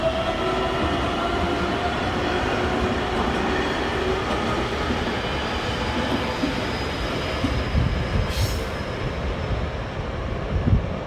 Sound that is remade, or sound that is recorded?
recorded